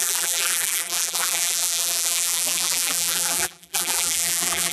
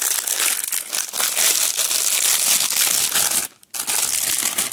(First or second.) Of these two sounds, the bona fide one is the second